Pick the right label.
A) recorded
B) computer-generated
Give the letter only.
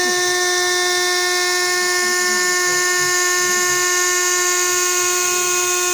A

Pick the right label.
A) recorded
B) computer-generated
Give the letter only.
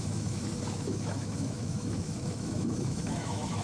B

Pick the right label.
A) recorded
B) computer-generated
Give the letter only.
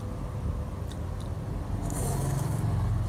A